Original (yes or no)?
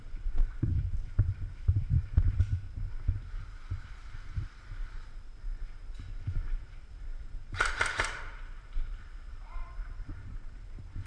no